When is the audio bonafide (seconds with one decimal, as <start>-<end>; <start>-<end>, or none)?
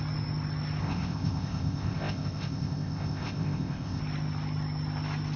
0.0-0.8; 4.0-5.4